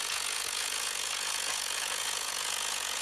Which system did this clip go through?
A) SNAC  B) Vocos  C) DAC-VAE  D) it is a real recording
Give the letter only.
B